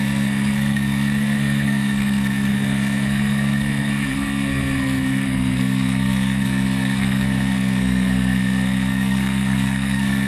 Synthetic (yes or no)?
yes